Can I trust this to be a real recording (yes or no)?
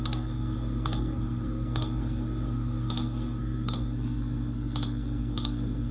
no